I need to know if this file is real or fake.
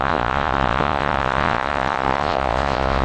fake